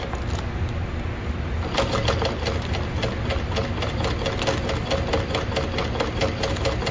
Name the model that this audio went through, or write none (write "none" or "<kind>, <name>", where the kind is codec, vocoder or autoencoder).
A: none